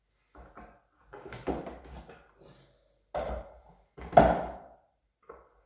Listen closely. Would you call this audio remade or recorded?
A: recorded